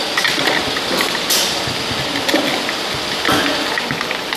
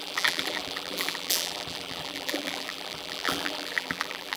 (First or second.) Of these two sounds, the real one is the first